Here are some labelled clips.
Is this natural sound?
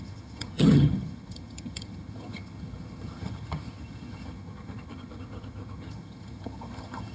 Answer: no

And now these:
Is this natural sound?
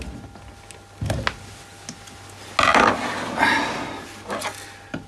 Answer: yes